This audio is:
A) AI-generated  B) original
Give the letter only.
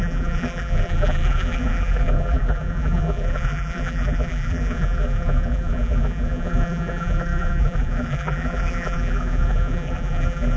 A